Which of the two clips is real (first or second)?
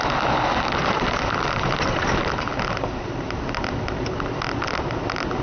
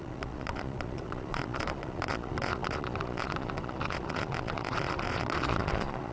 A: first